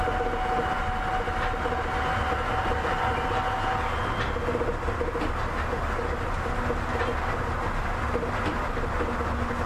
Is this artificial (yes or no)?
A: no